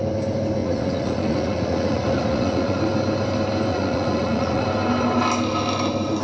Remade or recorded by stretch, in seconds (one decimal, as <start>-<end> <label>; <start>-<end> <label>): 0.0-0.6 recorded; 0.6-2.8 remade; 2.8-3.7 recorded; 3.7-4.6 remade; 4.6-6.2 recorded